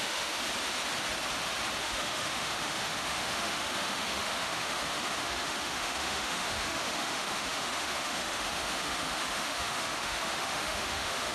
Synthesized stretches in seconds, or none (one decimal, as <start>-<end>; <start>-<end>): 0.0-0.4; 1.8-11.3